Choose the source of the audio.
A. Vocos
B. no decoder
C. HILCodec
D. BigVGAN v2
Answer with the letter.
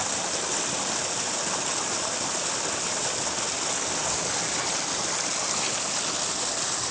B